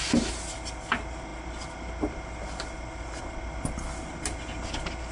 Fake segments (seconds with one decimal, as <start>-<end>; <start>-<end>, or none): none